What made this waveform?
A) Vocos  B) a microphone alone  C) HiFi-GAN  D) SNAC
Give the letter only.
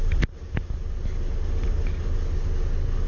B